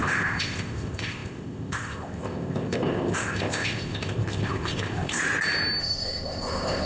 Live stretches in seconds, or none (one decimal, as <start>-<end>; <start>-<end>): 5.2-5.8